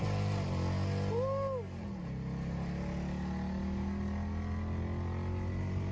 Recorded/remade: recorded